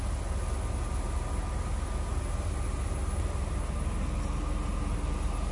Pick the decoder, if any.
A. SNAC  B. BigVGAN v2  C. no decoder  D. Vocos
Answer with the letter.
C